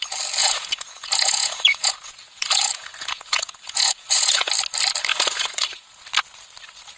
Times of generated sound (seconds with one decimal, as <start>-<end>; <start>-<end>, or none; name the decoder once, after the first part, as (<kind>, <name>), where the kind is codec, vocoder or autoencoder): 0.4-4.5 (vocoder, Vocos); 5.1-6.0